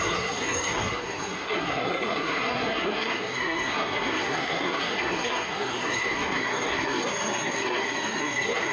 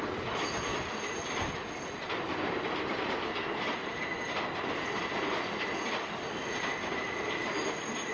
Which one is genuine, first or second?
second